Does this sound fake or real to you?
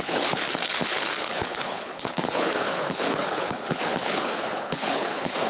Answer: fake